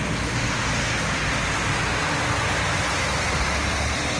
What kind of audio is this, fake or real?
real